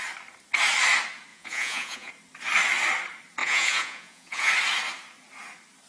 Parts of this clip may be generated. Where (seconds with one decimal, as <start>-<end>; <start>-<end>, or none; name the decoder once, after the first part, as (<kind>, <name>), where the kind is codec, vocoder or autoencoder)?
1.3-2.1 (vocoder, Vocos); 3.4-4.5